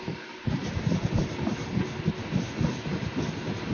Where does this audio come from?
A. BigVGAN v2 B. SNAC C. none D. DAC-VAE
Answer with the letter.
C